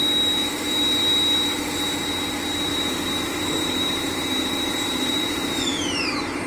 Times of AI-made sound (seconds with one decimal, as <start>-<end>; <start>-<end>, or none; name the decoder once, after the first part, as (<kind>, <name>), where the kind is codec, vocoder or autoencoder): 2.7-6.5 (vocoder, BigVGAN v2)